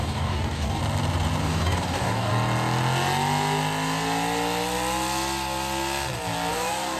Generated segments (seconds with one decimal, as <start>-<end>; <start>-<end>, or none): 0.0-0.8; 1.4-2.3; 6.5-7.0